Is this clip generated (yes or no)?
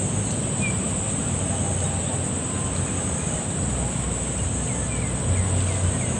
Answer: no